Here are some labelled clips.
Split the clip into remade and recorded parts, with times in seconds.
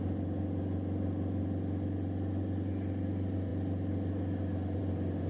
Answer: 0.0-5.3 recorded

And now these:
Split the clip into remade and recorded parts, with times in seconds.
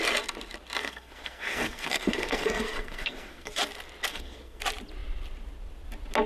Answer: 0.0-0.8 recorded; 0.8-3.5 remade; 3.5-4.1 recorded; 4.1-4.6 remade; 4.6-6.3 recorded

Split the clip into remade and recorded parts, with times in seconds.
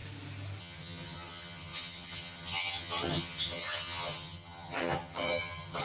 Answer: 0.0-0.6 recorded; 0.6-5.8 remade